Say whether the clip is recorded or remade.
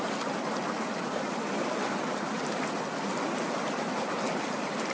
recorded